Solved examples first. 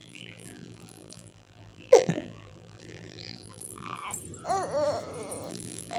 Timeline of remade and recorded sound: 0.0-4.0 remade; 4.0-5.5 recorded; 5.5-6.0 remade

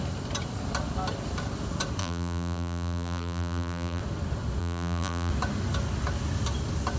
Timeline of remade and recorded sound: 0.0-2.0 recorded; 2.0-4.0 remade; 4.0-4.6 recorded; 4.6-5.3 remade; 5.3-7.0 recorded

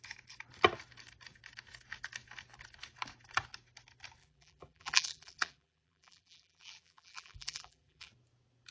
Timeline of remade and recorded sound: 0.0-4.2 recorded; 4.2-8.1 remade; 8.1-8.7 recorded

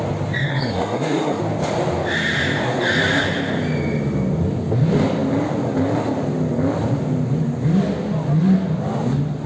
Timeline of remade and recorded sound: 0.0-0.5 recorded; 0.5-1.4 remade; 1.4-9.5 recorded